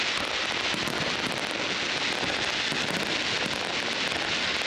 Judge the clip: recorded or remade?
recorded